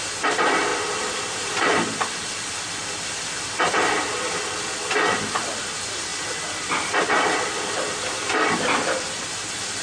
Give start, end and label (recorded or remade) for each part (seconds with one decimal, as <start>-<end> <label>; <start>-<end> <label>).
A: 0.0-0.7 recorded; 0.7-3.8 remade; 3.8-6.1 recorded; 6.1-7.5 remade; 7.5-9.8 recorded